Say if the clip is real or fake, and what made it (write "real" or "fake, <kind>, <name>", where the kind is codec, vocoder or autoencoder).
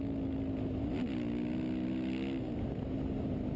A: real